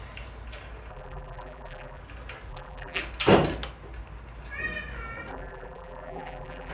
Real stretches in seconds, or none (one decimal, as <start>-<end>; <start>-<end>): 0.0-0.9; 2.0-2.5; 3.0-5.3